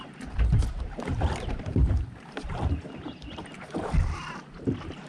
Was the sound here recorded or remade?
remade